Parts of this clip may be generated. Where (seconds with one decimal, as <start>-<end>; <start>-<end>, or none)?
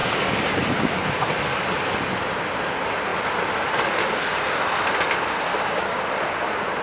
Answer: 0.0-1.0; 4.0-4.6; 5.5-6.0